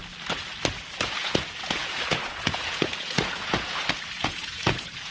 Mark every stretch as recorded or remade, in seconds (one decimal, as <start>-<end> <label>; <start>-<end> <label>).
0.0-1.2 recorded; 1.2-5.1 remade